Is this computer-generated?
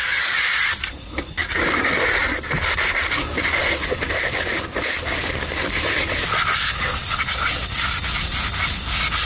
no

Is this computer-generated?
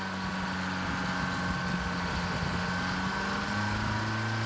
no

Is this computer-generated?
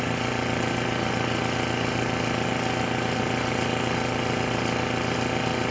no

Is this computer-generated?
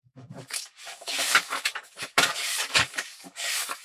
yes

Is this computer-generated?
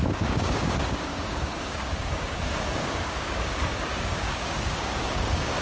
yes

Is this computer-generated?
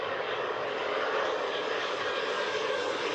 yes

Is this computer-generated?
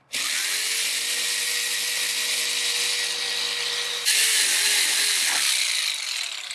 no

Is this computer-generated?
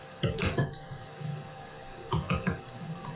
yes